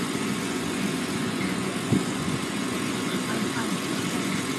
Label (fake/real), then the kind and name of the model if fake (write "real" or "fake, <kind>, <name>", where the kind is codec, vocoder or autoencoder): fake, vocoder, Vocos